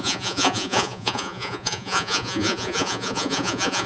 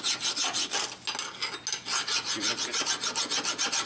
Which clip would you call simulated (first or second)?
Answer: first